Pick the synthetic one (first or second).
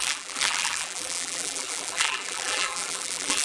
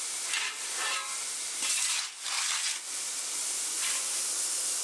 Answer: first